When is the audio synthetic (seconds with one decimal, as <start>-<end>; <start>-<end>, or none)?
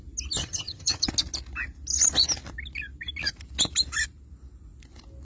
0.4-1.1